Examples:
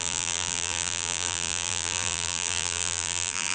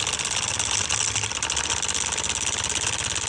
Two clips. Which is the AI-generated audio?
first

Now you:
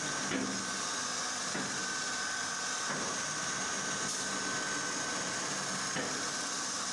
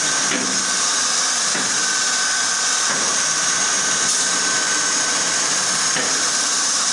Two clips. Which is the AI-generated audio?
second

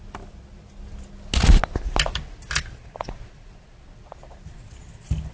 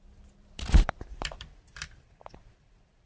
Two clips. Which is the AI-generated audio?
second